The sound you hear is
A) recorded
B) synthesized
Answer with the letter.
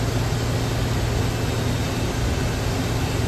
A